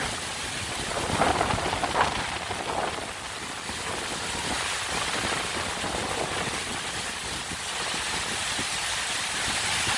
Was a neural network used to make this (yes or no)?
no